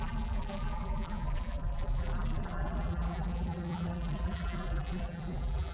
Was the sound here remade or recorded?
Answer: remade